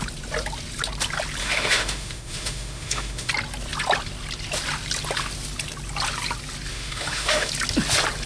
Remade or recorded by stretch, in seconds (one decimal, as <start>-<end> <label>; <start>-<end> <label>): 0.0-1.4 recorded; 1.4-3.3 remade; 3.3-6.7 recorded; 6.7-7.5 remade; 7.5-8.3 recorded